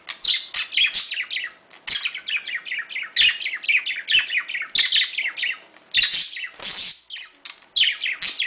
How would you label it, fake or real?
real